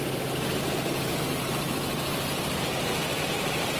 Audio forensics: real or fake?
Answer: fake